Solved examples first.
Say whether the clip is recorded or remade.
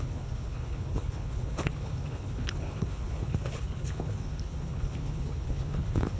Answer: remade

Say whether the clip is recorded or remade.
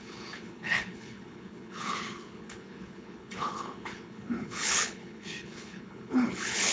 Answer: remade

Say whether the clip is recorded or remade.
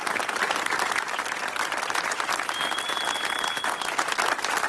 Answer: recorded